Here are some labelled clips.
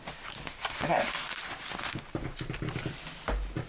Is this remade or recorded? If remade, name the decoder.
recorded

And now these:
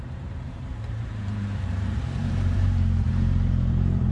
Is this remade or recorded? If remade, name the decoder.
remade, vocoder, BigVGAN v2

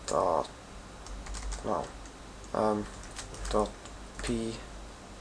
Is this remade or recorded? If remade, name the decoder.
recorded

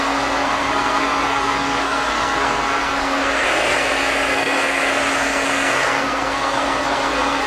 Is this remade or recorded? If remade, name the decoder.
remade, codec, SNAC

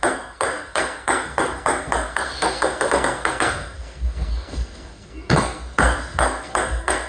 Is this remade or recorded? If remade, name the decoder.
remade, codec, SNAC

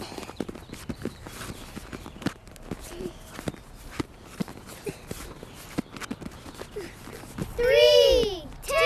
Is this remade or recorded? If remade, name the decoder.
recorded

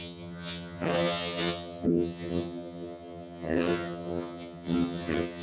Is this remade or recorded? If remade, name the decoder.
remade, vocoder, HiFi-GAN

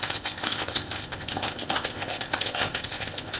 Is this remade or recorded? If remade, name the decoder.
remade, codec, ZipCodec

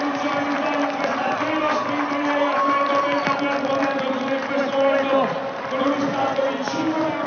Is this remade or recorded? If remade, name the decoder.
recorded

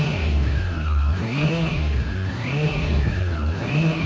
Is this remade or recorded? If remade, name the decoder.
remade, codec, SNAC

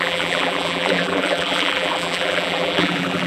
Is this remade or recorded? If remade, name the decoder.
remade, vocoder, BigVGAN v2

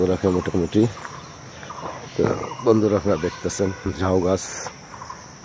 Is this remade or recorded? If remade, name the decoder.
recorded